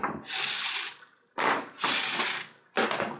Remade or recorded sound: recorded